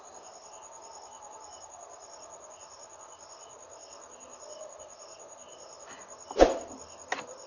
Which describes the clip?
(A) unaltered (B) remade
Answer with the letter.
A